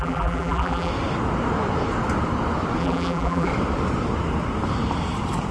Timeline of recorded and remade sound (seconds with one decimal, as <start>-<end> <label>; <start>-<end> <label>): 0.0-0.9 remade; 0.9-2.8 recorded; 2.8-3.5 remade; 3.5-5.5 recorded